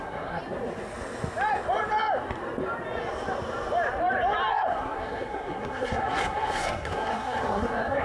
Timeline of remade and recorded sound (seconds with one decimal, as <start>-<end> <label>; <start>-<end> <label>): 0.0-0.4 remade; 0.4-4.5 recorded; 4.5-8.0 remade